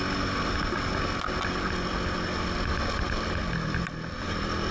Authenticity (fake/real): real